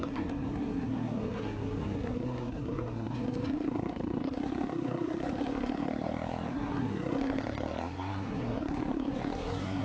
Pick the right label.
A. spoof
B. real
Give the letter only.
A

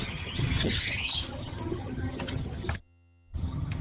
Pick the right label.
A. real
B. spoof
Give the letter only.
B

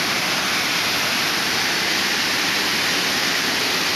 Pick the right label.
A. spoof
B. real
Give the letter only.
B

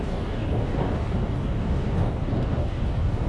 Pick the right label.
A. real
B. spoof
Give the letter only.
B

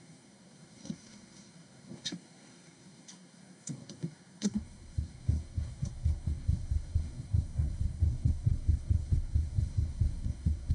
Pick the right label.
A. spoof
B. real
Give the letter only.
A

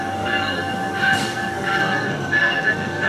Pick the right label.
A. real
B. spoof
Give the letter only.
B